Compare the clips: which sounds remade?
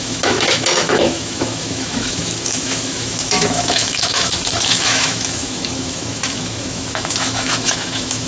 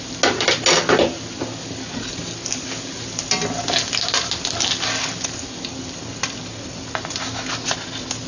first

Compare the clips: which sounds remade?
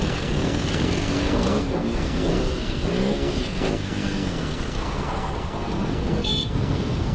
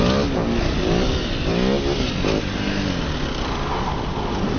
first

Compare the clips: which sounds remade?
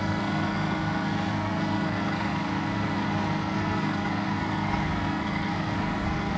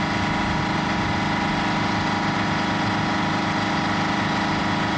first